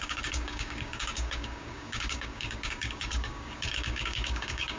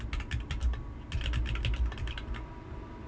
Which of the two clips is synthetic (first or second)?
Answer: first